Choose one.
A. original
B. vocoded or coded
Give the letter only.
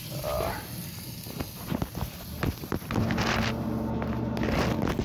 A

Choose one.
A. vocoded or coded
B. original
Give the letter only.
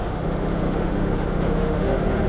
A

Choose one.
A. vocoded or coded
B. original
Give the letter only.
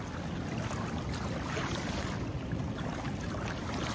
B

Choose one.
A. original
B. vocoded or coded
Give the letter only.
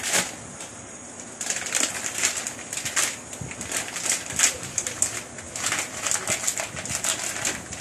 A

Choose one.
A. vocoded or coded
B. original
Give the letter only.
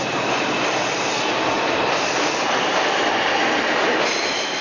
B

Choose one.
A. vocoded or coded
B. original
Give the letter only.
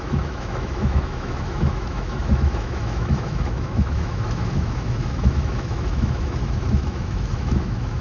A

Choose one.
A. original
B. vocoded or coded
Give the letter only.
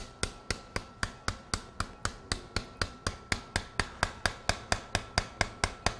A